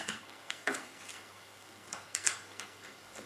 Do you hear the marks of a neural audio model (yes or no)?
yes